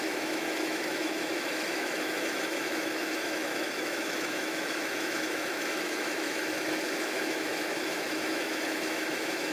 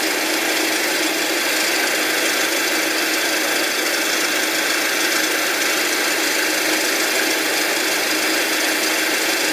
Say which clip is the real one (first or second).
second